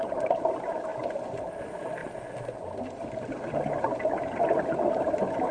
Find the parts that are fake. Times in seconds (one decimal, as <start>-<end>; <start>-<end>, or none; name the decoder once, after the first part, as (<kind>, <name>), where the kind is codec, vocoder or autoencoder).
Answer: 0.0-0.9 (vocoder, BigVGAN v2); 1.5-2.0

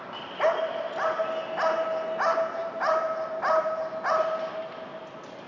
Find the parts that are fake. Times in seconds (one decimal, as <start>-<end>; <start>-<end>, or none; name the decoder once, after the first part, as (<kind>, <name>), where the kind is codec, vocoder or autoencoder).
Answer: none